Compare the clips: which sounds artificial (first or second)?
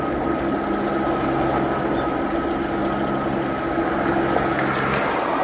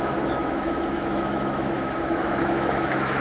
second